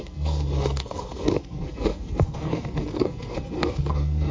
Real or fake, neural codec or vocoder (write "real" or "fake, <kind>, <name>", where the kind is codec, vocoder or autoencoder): fake, codec, SNAC